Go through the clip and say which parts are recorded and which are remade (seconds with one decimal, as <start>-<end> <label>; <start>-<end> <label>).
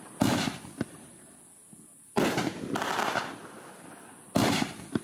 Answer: 0.0-5.0 recorded